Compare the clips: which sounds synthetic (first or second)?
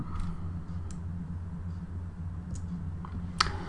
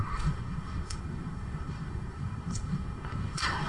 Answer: second